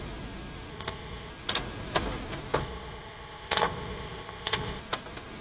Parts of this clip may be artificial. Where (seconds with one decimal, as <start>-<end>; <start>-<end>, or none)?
0.7-1.3; 2.6-4.8